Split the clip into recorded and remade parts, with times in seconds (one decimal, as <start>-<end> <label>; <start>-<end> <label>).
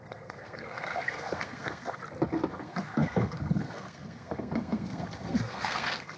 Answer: 0.0-2.0 remade; 2.0-2.5 recorded; 2.5-6.2 remade